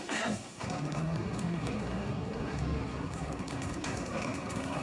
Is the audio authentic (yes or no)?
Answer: no